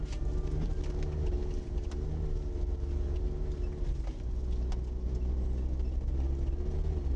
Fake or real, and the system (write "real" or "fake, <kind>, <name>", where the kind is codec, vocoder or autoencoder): real